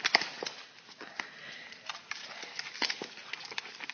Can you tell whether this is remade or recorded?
recorded